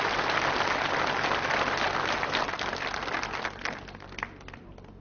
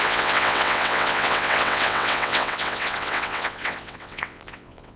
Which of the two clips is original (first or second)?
first